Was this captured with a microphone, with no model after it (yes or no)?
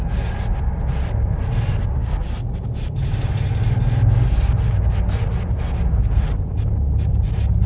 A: yes